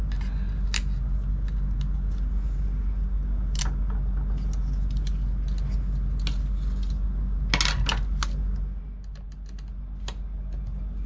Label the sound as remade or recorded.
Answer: recorded